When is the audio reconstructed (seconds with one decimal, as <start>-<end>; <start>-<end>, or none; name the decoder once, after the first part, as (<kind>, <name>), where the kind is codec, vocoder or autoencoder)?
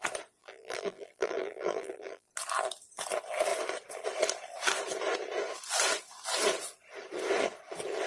0.4-2.3 (vocoder, BigVGAN v2)